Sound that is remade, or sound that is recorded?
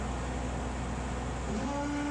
recorded